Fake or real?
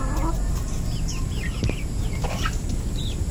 real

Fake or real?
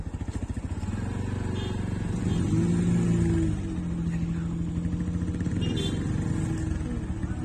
real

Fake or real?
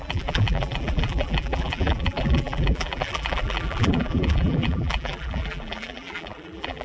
fake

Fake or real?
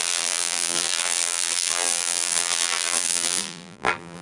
fake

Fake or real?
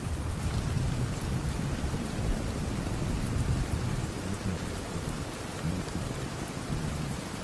fake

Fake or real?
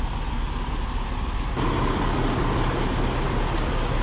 real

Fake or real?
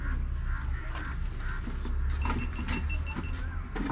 real